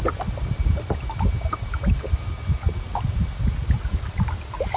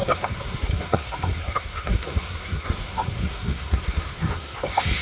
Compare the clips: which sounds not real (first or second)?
second